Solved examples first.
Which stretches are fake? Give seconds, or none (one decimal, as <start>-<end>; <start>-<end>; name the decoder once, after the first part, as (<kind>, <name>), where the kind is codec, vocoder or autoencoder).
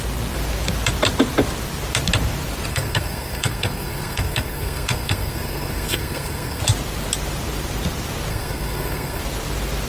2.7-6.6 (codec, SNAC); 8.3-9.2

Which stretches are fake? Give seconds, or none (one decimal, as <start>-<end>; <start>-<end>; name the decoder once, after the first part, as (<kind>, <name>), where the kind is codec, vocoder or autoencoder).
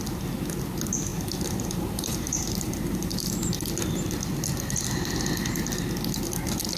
1.1-3.3 (vocoder, BigVGAN v2)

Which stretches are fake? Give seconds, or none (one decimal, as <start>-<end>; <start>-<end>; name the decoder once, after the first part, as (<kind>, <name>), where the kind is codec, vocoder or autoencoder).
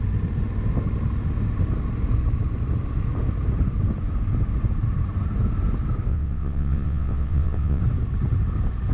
6.1-7.8 (vocoder, WaveNeXt)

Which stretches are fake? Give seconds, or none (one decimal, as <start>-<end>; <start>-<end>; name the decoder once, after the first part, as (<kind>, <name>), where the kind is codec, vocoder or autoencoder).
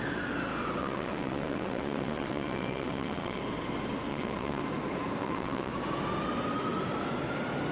0.8-3.4 (vocoder, WaveNeXt); 4.1-4.6; 5.2-5.7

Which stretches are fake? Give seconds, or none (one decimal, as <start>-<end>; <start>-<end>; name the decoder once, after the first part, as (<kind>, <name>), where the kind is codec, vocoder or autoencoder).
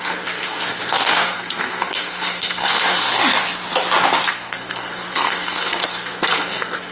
0.0-3.2 (codec, SNAC); 4.3-6.9